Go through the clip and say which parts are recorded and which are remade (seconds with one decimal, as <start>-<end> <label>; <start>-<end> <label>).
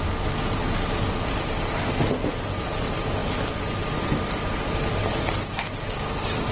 0.0-6.5 recorded